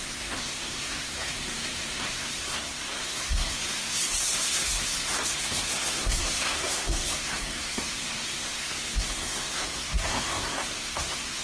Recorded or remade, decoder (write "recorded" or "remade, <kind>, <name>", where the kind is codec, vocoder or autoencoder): remade, codec, SNAC